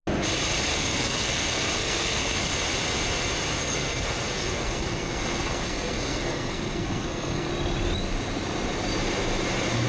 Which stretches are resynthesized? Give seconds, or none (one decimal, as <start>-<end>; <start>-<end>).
0.7-2.6; 3.6-7.5